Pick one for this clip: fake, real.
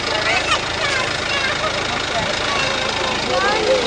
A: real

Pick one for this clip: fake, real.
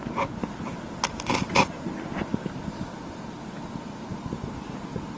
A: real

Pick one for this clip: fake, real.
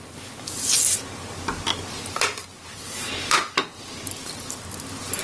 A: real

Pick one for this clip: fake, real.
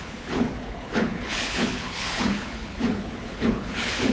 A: fake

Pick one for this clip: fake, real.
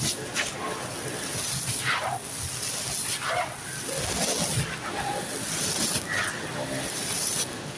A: real